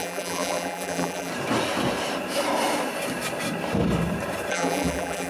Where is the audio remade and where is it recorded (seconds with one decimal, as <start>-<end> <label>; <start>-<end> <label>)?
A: 0.0-1.3 remade; 1.3-4.5 recorded; 4.5-5.3 remade